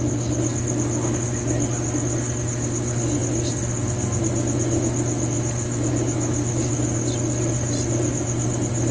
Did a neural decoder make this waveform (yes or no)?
no